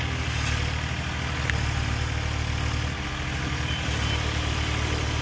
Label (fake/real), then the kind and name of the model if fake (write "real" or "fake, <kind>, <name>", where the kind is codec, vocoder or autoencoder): real